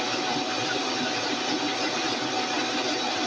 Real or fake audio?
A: fake